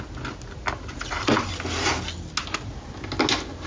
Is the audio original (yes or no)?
yes